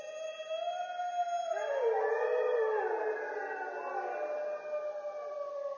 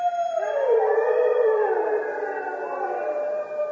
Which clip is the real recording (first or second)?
first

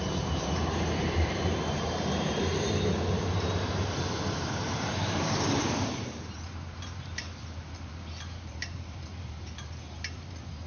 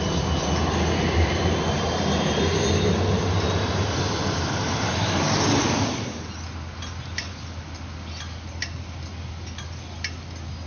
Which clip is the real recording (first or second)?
second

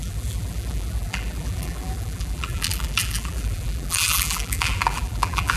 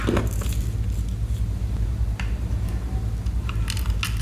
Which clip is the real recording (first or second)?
second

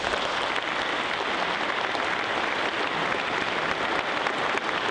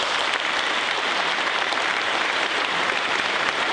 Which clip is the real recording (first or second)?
first